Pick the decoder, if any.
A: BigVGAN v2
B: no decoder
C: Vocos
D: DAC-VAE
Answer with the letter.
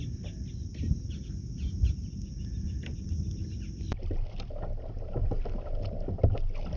B